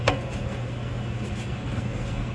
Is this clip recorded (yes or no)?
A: no